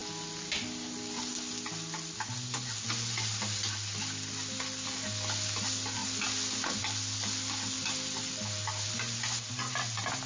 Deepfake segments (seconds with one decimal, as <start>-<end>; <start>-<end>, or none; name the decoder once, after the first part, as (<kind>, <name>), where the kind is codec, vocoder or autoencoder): none